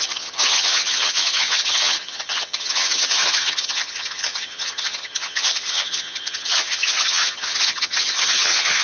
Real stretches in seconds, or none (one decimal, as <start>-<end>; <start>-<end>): none